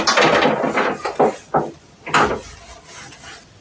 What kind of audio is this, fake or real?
real